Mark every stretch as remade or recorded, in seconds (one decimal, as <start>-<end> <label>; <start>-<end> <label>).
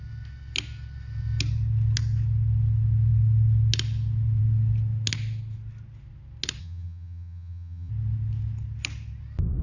0.0-6.6 recorded; 6.6-7.9 remade; 7.9-9.6 recorded